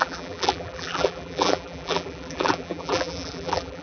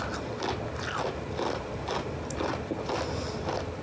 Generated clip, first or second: first